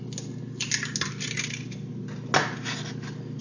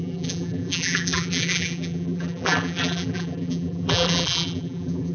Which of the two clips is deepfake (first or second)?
second